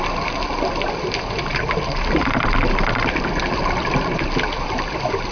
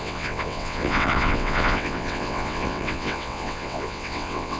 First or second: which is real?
first